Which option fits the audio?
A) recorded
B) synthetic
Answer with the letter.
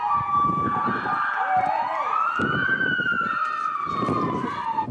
A